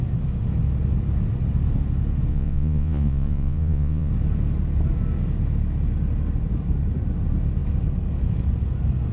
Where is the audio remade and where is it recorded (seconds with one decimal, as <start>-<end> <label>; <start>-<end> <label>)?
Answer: 0.0-2.3 recorded; 2.3-4.1 remade; 4.1-9.1 recorded